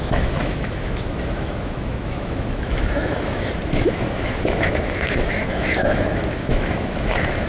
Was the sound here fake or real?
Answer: fake